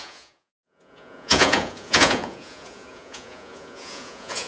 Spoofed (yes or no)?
yes